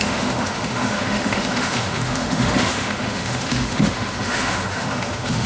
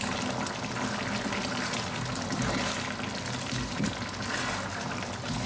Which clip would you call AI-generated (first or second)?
first